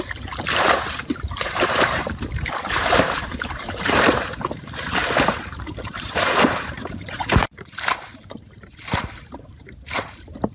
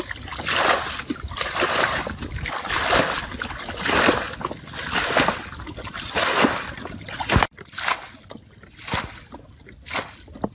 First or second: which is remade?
first